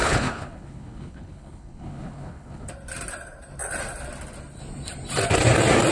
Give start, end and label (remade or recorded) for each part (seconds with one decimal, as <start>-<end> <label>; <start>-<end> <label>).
0.0-2.7 remade; 2.7-5.9 recorded